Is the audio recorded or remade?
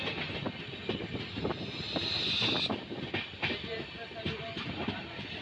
recorded